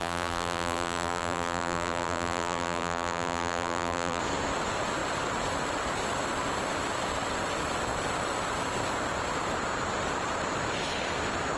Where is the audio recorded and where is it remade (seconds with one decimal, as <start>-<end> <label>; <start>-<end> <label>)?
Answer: 0.0-4.2 remade; 4.2-11.6 recorded